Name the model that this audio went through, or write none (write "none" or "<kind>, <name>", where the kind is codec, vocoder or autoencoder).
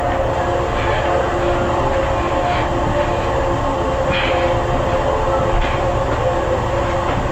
none